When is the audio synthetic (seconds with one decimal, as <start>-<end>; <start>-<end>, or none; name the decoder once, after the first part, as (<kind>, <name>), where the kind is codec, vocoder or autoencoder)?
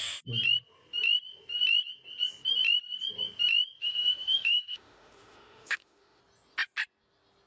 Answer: 3.8-6.2 (autoencoder, DAC-VAE)